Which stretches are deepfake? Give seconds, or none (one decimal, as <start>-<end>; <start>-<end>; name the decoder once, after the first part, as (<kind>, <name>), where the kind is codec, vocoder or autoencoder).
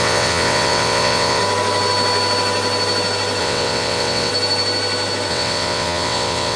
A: 0.0-1.4 (vocoder, WaveNeXt); 3.4-4.3; 5.3-6.6